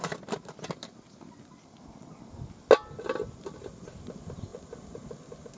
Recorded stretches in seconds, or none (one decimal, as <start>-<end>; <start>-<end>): 0.0-5.6